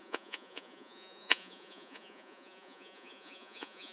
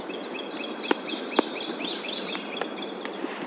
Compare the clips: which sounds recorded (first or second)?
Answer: second